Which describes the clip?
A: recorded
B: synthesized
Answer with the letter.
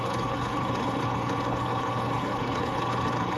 B